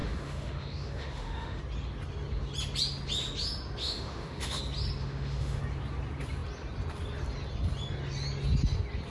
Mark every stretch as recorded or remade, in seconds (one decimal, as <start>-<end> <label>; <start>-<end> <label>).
0.0-1.6 remade; 1.6-3.8 recorded; 3.8-4.6 remade; 4.6-5.0 recorded; 5.0-5.6 remade; 5.6-9.1 recorded